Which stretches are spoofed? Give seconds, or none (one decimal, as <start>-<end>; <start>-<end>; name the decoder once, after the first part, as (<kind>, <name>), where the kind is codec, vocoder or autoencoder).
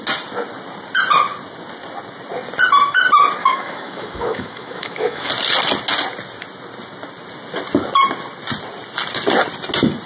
3.4-5.3 (autoencoder, DAC-VAE)